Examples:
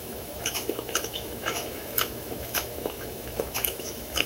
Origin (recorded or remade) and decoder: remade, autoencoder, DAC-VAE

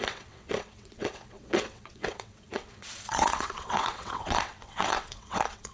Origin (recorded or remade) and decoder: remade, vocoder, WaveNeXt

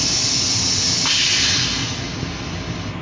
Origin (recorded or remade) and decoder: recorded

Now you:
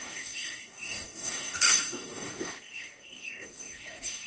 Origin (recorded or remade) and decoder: remade, codec, DAC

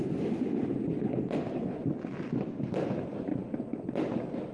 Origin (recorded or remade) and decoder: recorded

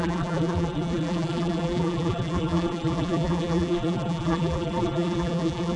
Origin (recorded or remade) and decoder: remade, vocoder, BigVGAN v2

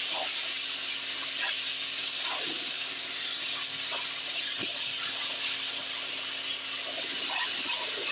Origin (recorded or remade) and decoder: recorded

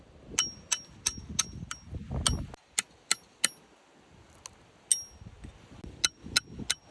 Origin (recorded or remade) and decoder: recorded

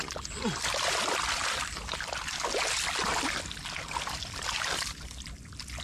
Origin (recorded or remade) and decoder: recorded